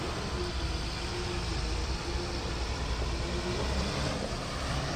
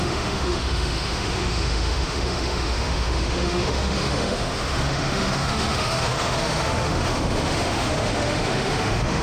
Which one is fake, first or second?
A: second